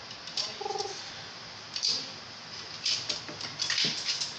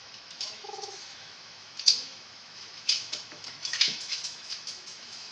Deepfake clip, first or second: second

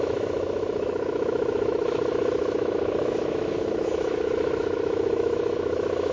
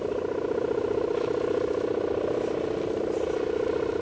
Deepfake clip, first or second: first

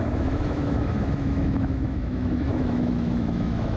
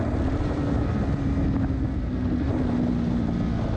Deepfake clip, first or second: first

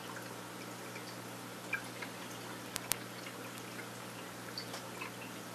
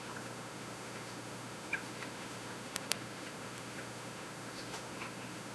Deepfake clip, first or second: second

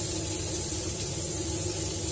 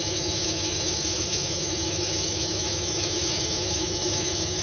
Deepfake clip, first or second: second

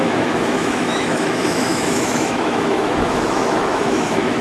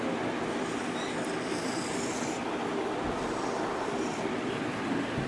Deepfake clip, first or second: first